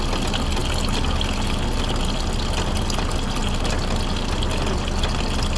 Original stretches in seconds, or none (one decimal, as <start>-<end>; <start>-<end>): 0.0-5.6